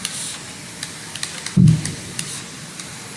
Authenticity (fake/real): real